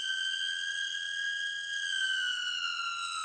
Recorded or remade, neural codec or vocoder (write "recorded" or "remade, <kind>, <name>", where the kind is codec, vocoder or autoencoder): remade, vocoder, WaveNeXt